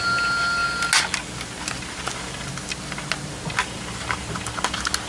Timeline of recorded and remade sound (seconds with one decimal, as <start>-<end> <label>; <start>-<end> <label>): 0.0-5.1 recorded